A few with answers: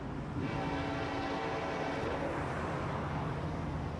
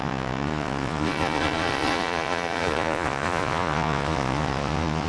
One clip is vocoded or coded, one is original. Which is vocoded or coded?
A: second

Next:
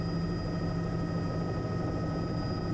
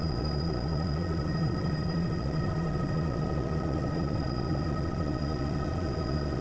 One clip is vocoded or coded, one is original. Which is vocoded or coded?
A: second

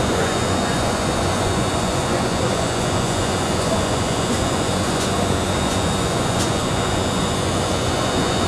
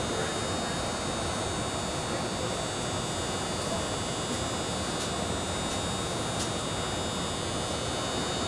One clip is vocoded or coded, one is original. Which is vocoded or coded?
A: first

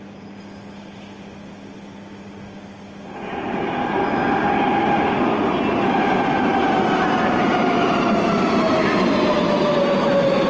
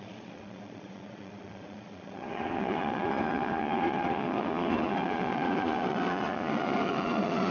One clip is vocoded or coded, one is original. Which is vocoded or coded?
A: second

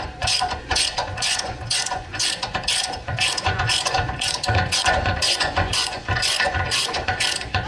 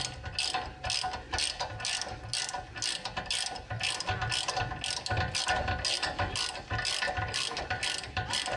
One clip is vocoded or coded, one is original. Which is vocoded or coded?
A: first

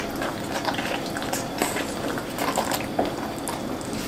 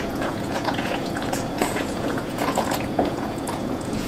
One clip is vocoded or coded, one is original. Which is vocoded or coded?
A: second